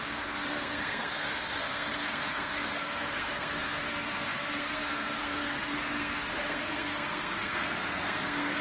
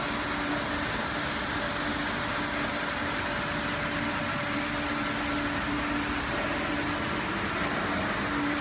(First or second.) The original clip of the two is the second